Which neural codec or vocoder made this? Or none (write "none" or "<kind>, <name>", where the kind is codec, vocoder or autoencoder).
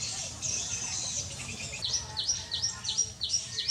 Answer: none